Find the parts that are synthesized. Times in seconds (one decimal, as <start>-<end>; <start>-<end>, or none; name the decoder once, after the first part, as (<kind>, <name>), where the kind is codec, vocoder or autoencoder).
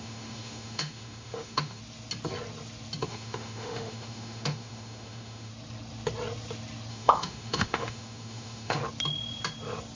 0.0-1.8 (autoencoder, DAC-VAE); 3.0-5.5; 6.9-8.8